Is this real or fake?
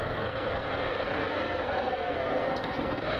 fake